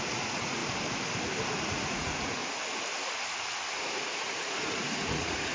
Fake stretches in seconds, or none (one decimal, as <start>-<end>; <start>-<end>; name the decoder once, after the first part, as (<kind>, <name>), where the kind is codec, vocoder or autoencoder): 0.0-0.6 (vocoder, Vocos); 1.6-2.4; 3.7-5.5

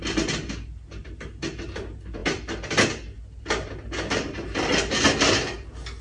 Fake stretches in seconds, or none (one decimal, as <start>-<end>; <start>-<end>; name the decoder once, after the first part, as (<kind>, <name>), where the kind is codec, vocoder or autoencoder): none

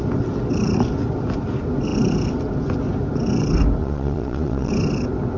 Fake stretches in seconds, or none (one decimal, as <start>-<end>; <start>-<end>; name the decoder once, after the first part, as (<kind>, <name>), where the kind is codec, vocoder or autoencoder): 3.8-4.7 (vocoder, Vocos)